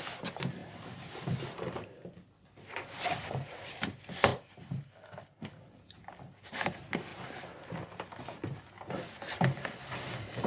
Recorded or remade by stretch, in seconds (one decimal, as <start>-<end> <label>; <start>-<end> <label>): 0.0-10.5 recorded